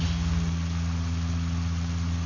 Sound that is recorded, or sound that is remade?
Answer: recorded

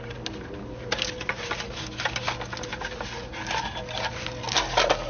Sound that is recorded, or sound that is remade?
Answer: recorded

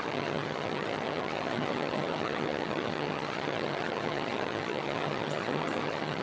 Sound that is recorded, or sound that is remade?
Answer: remade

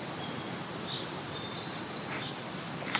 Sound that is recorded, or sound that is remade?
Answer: recorded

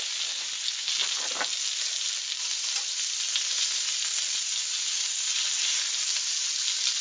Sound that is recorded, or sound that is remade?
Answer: recorded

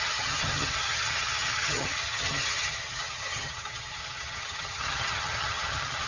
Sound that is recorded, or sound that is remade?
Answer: remade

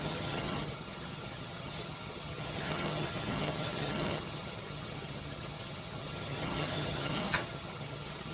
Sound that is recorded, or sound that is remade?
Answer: remade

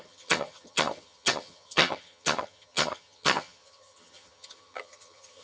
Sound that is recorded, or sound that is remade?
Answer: remade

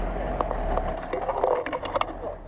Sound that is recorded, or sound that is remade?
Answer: recorded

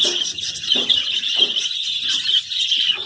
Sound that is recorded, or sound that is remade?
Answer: recorded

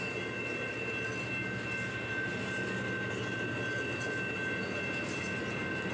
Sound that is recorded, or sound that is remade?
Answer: recorded